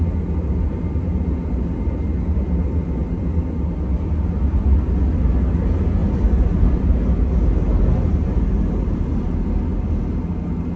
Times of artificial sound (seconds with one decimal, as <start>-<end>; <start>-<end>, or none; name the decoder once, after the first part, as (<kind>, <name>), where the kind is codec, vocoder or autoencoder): 3.0-5.3 (vocoder, BigVGAN v2); 6.0-6.9